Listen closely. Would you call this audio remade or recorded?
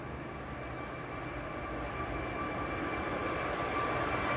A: recorded